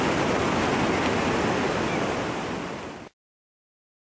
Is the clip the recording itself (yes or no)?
yes